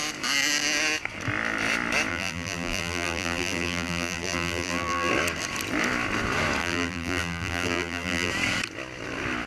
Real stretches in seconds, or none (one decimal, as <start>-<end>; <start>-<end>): 0.0-2.1; 5.1-6.6; 8.3-9.5